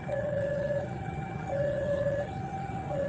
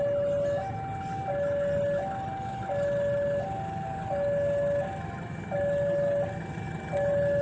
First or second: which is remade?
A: first